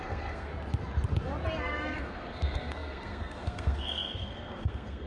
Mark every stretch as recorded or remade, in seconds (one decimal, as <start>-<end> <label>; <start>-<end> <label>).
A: 0.0-0.5 remade; 0.5-1.6 recorded; 1.6-5.1 remade